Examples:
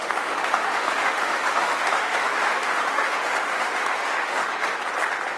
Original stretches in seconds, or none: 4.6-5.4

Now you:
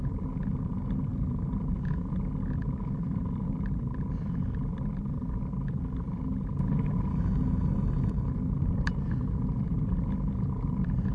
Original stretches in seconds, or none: 0.0-7.1; 8.3-11.1

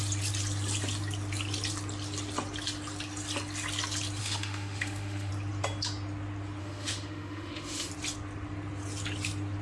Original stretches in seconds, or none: 0.0-4.2; 5.3-6.6; 7.9-9.6

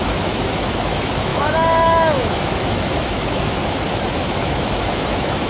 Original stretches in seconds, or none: 3.6-4.1

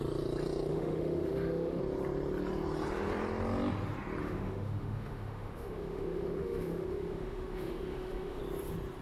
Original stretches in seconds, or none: 0.0-0.7; 1.8-4.2; 8.4-9.0

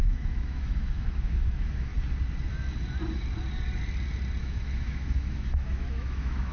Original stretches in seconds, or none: 1.9-4.4

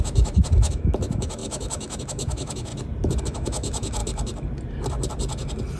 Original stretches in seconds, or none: 2.7-3.2; 4.0-5.8

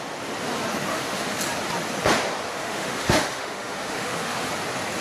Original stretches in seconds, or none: 0.0-0.9; 1.4-2.5; 4.5-5.0